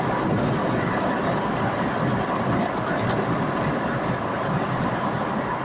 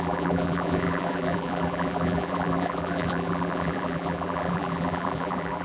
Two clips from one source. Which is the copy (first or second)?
second